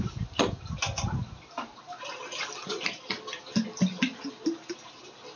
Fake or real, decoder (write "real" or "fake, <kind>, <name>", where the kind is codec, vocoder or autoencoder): real